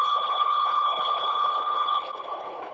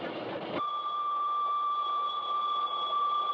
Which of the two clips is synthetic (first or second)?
first